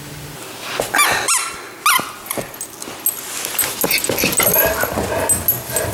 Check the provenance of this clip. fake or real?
real